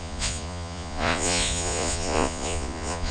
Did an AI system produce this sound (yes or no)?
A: yes